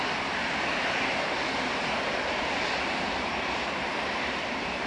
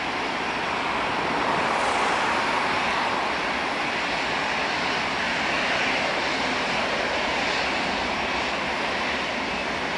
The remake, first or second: first